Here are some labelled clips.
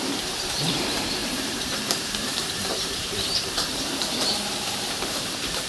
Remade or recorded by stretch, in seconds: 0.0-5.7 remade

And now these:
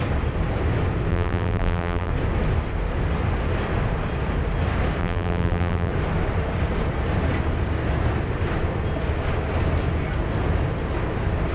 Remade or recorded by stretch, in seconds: 0.0-1.1 recorded; 1.1-2.1 remade; 2.1-5.0 recorded; 5.0-5.9 remade; 5.9-11.5 recorded

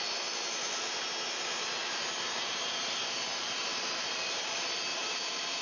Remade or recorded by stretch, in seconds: 0.0-1.8 recorded; 1.8-5.6 remade